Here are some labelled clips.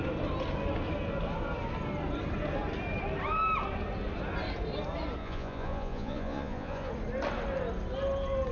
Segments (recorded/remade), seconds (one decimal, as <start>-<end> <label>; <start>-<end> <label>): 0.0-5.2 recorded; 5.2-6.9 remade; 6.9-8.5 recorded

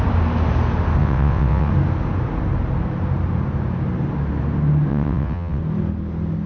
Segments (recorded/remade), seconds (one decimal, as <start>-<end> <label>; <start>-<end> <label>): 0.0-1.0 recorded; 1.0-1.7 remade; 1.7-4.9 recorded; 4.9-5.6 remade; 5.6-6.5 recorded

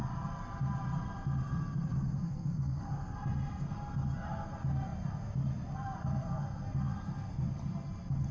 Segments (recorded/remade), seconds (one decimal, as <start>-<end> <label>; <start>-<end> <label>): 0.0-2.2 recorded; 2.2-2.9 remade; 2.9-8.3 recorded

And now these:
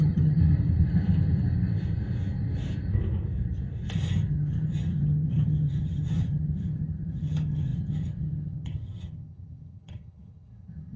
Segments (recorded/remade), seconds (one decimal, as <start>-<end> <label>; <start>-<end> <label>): 0.0-0.4 remade; 0.4-4.3 recorded; 4.3-11.0 remade